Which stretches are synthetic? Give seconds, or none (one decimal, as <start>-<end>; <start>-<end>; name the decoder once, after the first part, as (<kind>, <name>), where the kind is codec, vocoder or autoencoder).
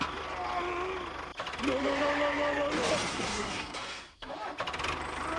3.1-4.3 (codec, SNAC)